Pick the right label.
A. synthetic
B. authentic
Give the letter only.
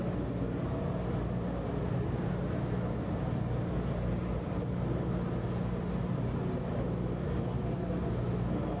B